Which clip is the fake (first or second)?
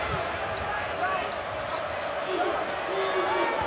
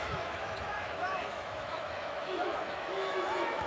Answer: second